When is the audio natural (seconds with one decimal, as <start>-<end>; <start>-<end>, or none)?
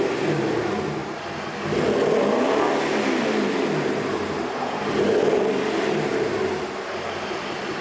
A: 0.0-7.8